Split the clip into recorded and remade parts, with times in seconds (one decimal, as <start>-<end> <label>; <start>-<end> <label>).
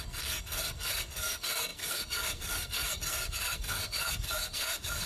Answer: 0.0-5.1 remade